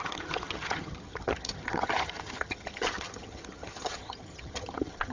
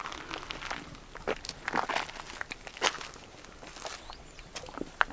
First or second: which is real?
second